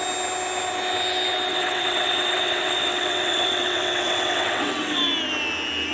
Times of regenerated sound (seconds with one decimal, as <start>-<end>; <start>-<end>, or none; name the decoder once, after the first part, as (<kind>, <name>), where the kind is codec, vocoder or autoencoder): 1.5-5.0 (vocoder, WaveNeXt)